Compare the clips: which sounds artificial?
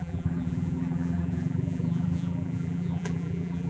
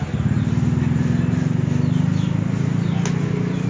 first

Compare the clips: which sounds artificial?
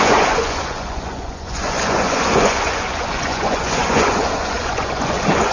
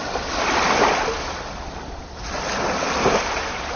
first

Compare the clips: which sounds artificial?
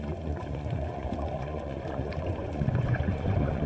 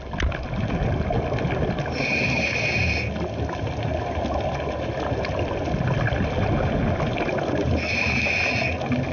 first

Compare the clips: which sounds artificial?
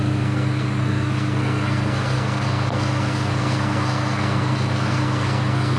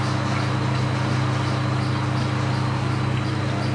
first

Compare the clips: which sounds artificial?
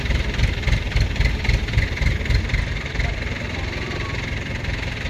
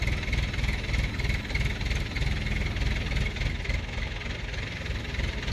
first